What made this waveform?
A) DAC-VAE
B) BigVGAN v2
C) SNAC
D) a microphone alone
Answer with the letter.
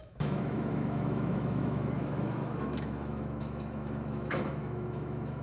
A